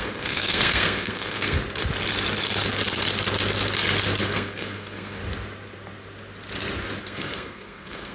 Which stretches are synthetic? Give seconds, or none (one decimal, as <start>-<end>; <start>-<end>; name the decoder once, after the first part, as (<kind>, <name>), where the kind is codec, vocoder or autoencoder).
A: 0.0-1.6 (codec, SNAC); 4.2-5.2; 7.0-8.1